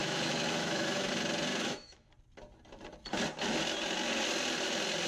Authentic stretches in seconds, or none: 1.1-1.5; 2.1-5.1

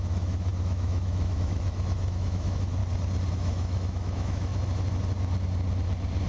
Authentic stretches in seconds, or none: 2.8-3.3; 4.5-6.3

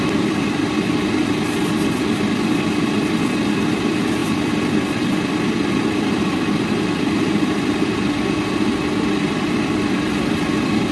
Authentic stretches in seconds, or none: 1.2-2.9

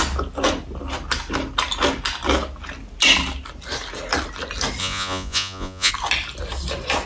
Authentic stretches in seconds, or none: 0.0-4.8; 5.9-7.1

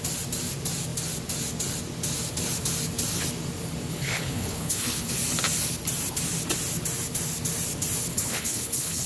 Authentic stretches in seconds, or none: 0.0-3.9; 5.2-8.1

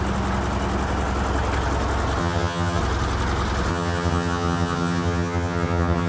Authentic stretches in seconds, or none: 0.0-2.2; 2.8-3.7